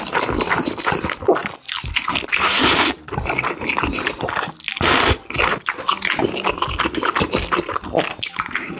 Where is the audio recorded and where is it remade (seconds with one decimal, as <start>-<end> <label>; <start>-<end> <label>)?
0.0-8.8 recorded